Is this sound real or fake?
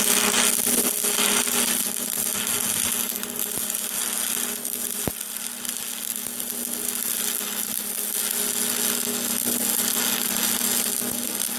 real